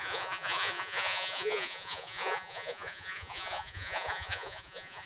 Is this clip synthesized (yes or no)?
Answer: yes